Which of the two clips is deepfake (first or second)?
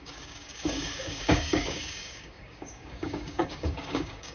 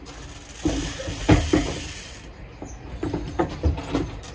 first